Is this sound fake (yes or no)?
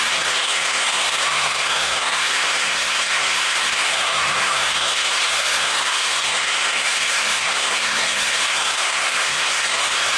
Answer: yes